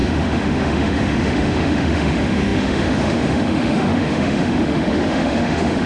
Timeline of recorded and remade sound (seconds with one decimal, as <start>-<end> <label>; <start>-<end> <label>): 0.0-5.9 remade